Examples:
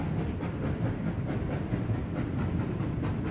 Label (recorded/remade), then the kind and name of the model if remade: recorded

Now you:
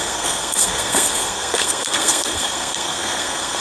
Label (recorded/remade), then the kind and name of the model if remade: remade, codec, SNAC